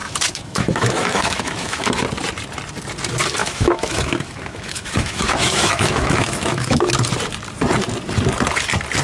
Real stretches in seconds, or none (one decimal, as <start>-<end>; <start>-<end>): 2.0-3.4; 6.9-9.0